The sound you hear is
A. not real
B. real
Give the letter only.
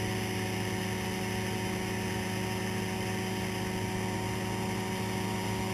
B